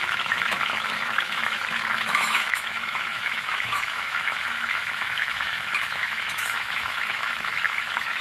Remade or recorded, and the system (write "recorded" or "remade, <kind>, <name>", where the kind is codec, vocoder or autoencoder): remade, autoencoder, DAC-VAE